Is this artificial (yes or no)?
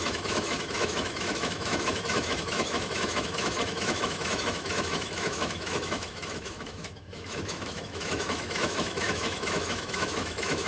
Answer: yes